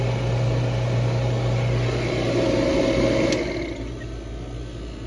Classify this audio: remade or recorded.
recorded